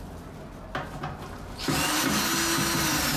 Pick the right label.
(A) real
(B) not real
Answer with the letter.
A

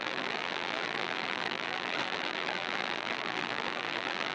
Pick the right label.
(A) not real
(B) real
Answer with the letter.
A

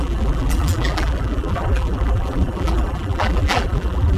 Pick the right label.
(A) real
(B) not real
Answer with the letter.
B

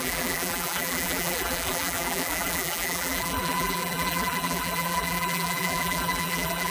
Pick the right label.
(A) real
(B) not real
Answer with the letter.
B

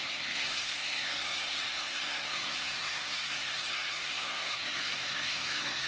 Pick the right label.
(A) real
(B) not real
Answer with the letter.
B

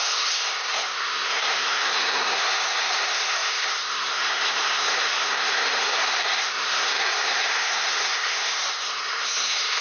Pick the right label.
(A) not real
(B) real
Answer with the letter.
A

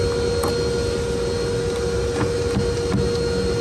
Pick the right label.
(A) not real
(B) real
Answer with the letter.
B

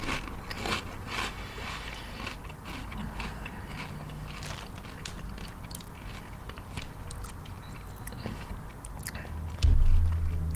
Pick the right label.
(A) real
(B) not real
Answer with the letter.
A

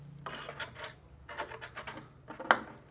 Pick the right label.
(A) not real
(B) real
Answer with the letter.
B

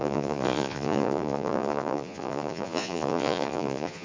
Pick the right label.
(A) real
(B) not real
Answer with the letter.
B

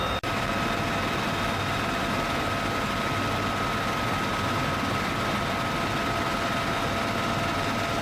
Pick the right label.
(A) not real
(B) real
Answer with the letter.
B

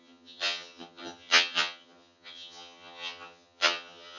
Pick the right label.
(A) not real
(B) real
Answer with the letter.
A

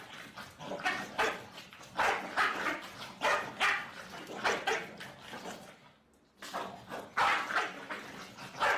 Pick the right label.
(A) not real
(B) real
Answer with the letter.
B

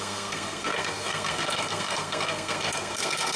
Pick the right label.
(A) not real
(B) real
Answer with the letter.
A